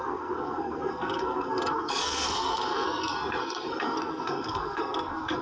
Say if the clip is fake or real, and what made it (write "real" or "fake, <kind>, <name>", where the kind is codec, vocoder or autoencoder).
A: fake, codec, SNAC